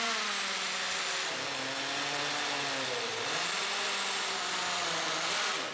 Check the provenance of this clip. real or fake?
real